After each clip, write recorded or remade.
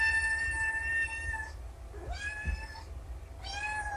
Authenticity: recorded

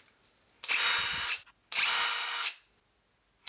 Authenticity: recorded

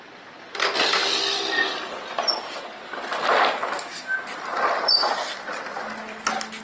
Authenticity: recorded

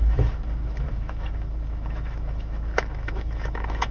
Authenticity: remade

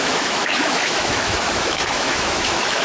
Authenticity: remade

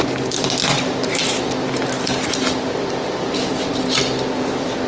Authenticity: recorded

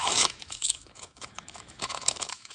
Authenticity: remade